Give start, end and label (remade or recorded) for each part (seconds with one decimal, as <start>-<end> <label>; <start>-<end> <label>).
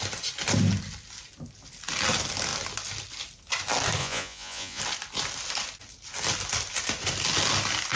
0.0-4.0 recorded; 4.0-4.8 remade; 4.8-8.0 recorded